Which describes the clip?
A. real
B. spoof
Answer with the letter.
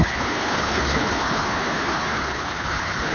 B